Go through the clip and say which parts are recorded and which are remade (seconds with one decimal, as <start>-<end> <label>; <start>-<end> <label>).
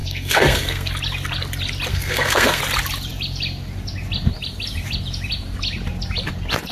0.0-0.9 remade; 0.9-1.9 recorded; 1.9-2.6 remade; 2.6-6.7 recorded